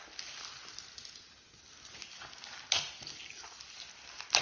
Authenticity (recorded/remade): recorded